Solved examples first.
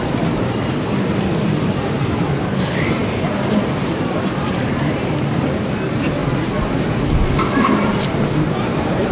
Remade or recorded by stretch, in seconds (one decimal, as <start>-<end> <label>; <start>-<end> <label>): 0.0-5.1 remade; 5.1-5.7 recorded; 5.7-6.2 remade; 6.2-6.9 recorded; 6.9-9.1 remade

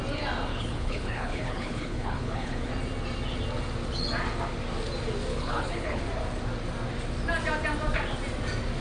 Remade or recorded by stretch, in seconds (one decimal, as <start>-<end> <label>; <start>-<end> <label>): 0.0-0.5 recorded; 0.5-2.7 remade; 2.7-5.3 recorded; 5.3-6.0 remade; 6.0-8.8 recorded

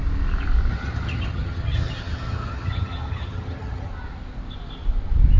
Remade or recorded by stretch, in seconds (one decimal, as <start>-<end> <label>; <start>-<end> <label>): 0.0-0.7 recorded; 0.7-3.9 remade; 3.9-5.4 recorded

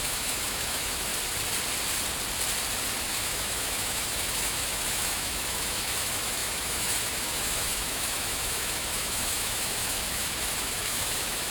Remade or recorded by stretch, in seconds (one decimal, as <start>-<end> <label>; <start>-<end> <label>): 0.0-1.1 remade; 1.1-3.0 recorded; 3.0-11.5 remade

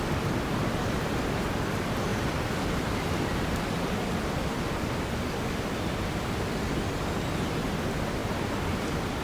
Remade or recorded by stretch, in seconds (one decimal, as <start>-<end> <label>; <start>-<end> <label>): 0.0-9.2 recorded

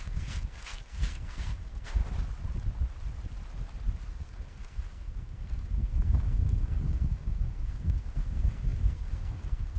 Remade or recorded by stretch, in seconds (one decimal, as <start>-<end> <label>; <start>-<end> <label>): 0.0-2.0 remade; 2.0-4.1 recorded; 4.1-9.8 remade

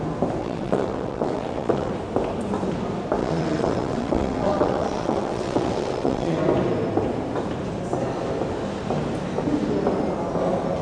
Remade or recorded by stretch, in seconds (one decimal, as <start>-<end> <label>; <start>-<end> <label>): 0.0-0.4 recorded; 0.4-1.9 remade; 1.9-3.2 recorded; 3.2-6.4 remade; 6.4-10.8 recorded

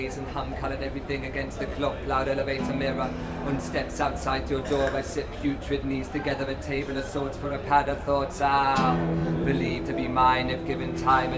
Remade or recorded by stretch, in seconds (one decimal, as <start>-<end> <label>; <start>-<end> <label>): 0.0-5.4 recorded; 5.4-8.0 remade; 8.0-9.2 recorded; 9.2-9.8 remade; 9.8-11.4 recorded